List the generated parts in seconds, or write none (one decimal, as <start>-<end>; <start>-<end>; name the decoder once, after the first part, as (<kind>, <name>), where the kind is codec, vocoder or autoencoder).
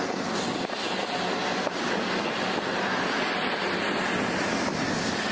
none